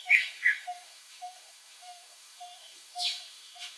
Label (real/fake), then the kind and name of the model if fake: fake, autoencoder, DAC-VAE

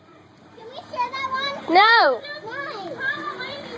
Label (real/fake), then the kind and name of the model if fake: fake, vocoder, BigVGAN v2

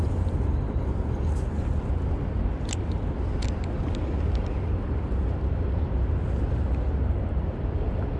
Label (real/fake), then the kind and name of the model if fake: real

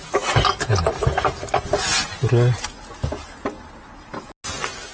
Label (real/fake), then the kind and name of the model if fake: real